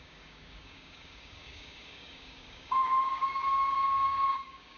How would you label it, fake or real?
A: fake